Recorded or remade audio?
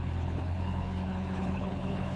remade